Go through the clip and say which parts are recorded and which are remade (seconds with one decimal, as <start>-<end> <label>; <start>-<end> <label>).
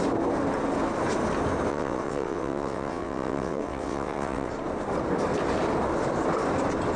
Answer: 0.0-1.7 recorded; 1.7-4.5 remade; 4.5-7.0 recorded